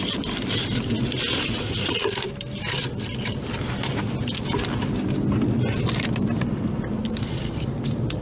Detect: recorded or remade recorded